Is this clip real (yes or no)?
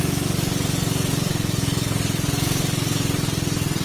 yes